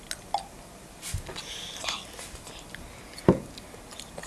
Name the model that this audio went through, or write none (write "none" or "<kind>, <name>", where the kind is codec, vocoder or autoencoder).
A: none